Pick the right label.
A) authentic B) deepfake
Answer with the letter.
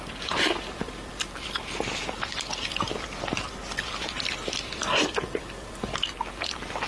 A